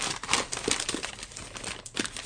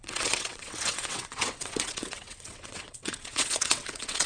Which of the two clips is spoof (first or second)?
second